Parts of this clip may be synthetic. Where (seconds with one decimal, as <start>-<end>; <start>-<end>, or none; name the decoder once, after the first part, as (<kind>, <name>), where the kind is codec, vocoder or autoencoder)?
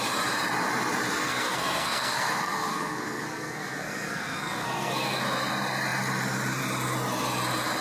1.2-5.2 (codec, SNAC)